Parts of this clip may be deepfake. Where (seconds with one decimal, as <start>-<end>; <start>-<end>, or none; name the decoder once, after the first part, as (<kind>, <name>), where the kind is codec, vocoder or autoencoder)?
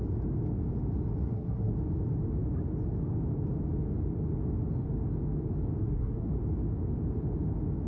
1.2-1.7 (codec, SNAC); 5.8-6.3